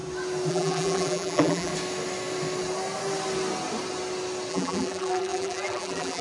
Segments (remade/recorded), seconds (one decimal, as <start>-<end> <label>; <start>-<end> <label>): 0.0-0.5 recorded; 0.5-1.7 remade; 1.7-4.5 recorded; 4.5-6.2 remade